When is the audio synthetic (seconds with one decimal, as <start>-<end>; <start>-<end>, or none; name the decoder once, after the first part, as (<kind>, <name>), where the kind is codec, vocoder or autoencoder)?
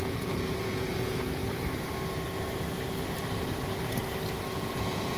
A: 0.0-1.4 (vocoder, Vocos); 4.5-5.2